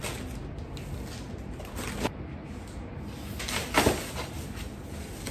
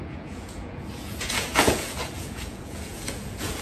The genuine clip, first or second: first